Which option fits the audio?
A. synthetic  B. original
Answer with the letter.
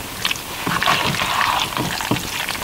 A